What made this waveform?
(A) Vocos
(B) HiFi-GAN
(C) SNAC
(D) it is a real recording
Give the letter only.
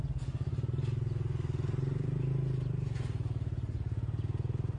D